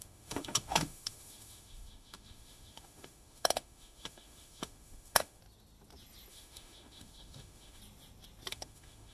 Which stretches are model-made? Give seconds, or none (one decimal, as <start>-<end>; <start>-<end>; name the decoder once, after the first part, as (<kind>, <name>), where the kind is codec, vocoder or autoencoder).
0.0-5.4 (autoencoder, DAC-VAE); 6.3-7.8; 8.5-9.1